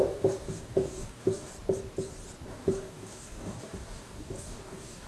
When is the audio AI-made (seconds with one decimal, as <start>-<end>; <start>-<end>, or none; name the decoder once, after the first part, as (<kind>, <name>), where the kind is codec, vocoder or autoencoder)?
0.0-1.5 (codec, DAC); 2.5-5.1